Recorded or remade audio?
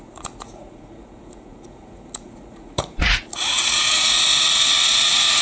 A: remade